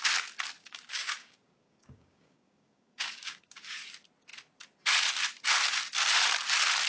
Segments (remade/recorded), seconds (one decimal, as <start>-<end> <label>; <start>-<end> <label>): 0.0-0.6 recorded; 0.6-3.6 remade; 3.6-6.9 recorded